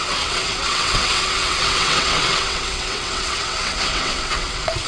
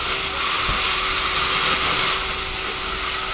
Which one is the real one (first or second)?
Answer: second